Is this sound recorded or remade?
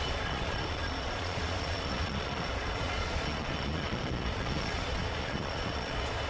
remade